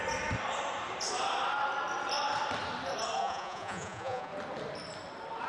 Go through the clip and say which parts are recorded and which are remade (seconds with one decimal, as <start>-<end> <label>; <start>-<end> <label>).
0.0-3.2 recorded; 3.2-4.3 remade; 4.3-5.5 recorded